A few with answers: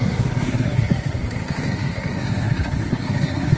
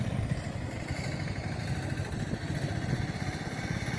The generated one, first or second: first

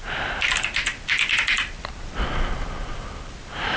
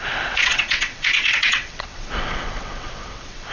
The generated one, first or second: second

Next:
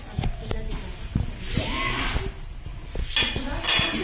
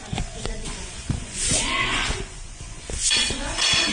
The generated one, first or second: second